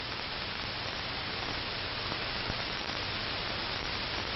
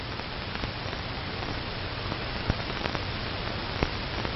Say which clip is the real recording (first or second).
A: first